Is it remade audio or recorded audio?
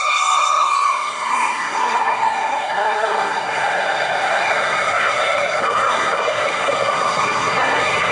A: remade